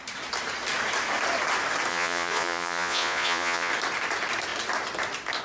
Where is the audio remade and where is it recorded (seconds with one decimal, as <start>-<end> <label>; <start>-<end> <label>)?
0.0-1.9 recorded; 1.9-3.7 remade; 3.7-5.4 recorded